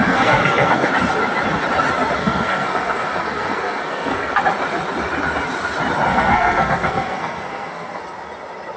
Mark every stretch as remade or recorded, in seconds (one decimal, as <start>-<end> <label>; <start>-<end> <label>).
0.0-0.9 remade; 0.9-2.2 recorded; 2.2-4.4 remade; 4.4-6.1 recorded; 6.1-8.0 remade; 8.0-8.8 recorded